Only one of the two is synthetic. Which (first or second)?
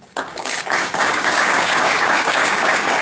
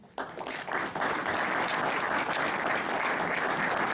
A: first